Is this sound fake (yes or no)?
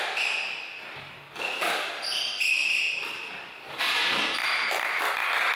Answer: yes